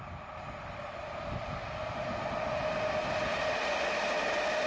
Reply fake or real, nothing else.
real